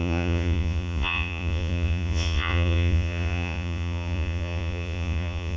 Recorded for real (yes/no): no